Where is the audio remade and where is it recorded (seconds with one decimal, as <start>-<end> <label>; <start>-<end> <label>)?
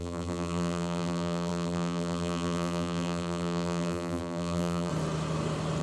0.0-4.9 remade; 4.9-5.8 recorded